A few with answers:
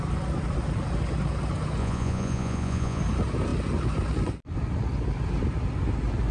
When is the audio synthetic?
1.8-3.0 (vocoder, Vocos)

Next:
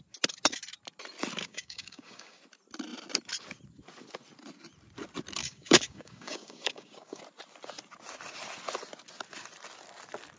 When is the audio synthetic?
1.4-2.4 (codec, DAC); 5.4-7.2

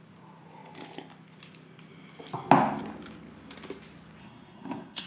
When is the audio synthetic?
4.2-5.1 (codec, SNAC)

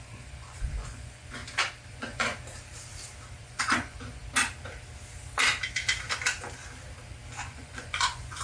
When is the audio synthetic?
0.0-1.4 (vocoder, Vocos); 1.9-2.3; 3.4-4.2; 7.5-8.4

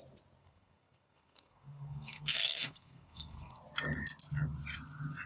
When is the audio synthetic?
0.4-3.6 (codec, SNAC)

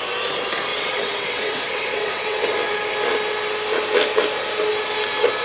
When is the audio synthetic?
0.7-2.5 (vocoder, WaveNeXt)

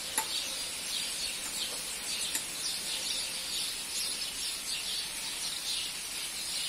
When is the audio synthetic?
none

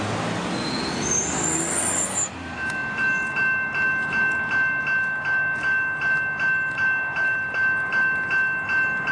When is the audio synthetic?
none